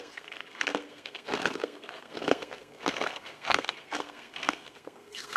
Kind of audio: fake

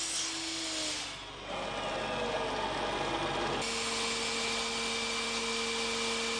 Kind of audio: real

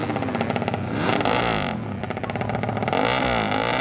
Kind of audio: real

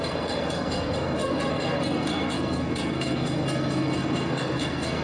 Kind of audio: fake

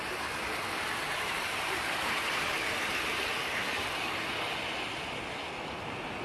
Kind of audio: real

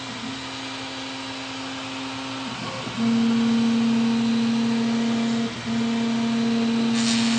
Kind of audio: real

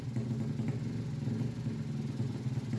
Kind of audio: real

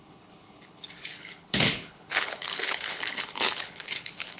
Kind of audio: fake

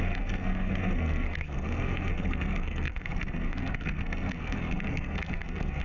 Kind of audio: fake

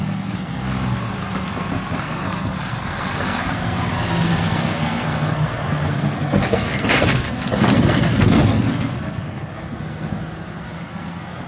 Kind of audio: fake